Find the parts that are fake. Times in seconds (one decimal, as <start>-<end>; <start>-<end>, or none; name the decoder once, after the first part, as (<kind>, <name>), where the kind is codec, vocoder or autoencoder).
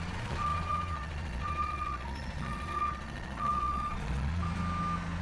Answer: 0.0-4.4 (vocoder, Vocos)